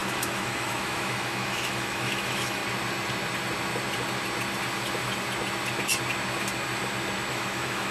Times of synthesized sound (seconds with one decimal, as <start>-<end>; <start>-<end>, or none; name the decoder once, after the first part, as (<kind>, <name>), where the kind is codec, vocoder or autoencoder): 0.0-2.6 (autoencoder, DAC-VAE); 7.3-7.9